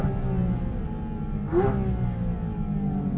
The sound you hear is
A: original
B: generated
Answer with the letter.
A